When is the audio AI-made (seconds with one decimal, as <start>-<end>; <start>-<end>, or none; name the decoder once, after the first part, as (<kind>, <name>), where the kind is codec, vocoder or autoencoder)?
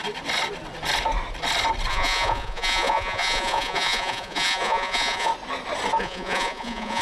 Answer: 1.9-5.3 (vocoder, Vocos); 6.0-7.0